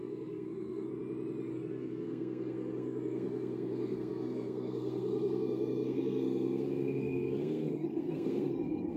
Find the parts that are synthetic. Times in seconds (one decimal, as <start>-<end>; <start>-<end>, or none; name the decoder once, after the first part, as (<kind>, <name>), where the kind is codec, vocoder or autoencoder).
0.0-0.9 (codec, SNAC); 1.5-9.0